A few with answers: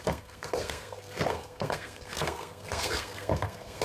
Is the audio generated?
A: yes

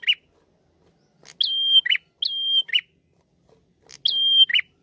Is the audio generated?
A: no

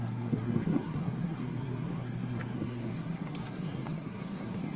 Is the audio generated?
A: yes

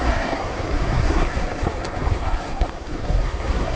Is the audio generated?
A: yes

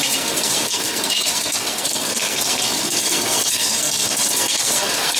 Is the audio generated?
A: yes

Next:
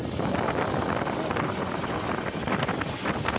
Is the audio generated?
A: no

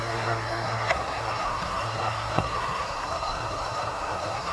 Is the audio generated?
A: yes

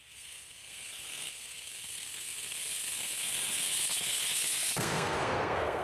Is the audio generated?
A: yes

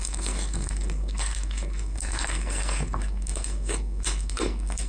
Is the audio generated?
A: yes